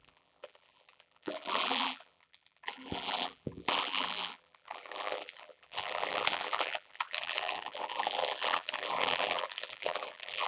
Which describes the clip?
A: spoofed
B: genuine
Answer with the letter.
A